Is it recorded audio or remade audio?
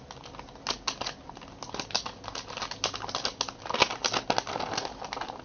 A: recorded